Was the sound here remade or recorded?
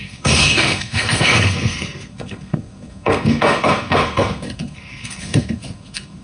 remade